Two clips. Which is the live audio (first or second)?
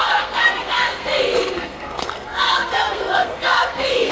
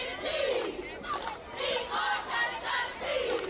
second